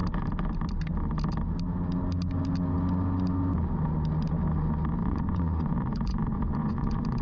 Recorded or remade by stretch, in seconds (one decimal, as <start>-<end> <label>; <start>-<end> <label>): 0.0-5.0 recorded; 5.0-7.2 remade